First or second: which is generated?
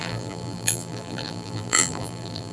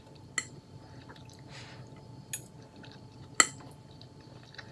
first